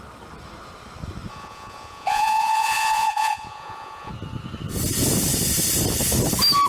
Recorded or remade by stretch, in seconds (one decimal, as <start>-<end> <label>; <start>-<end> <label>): 0.0-1.3 recorded; 1.3-4.1 remade; 4.1-6.7 recorded